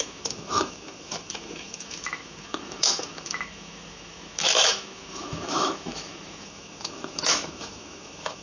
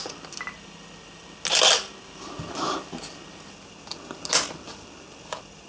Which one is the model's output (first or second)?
first